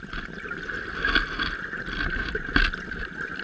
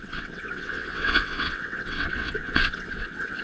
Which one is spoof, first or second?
second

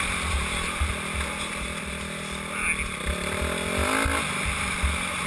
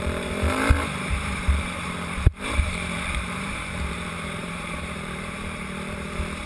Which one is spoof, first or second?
second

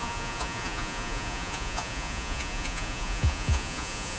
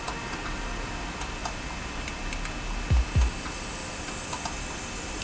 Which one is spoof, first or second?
first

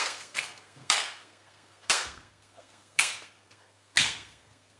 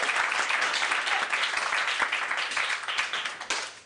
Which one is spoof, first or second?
first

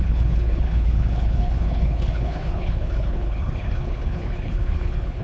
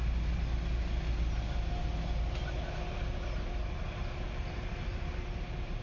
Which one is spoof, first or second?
first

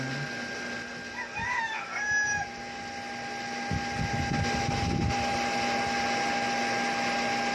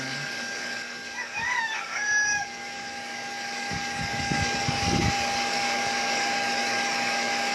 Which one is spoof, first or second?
second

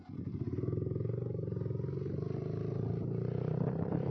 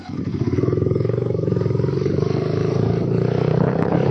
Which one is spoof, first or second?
second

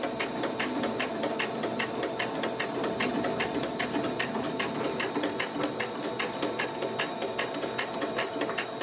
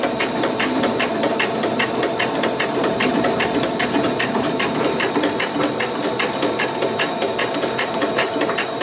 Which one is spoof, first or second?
second